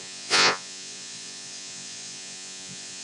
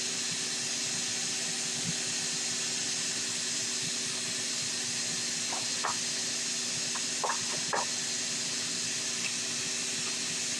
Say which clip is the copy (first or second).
first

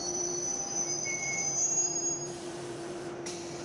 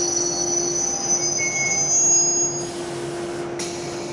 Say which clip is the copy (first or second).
first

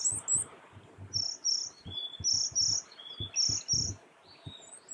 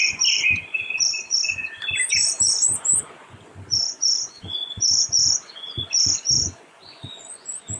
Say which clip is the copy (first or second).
second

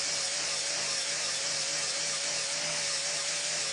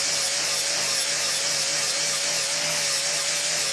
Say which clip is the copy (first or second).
first